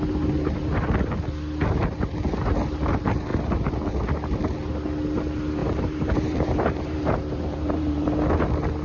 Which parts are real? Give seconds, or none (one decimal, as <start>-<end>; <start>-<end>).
0.0-5.6; 8.1-8.8